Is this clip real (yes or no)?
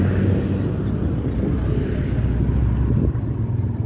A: yes